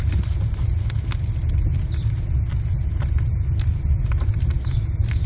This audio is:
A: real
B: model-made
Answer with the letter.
A